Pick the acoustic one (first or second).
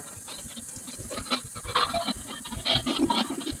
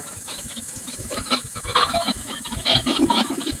first